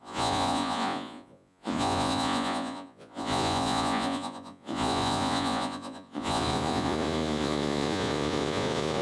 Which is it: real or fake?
fake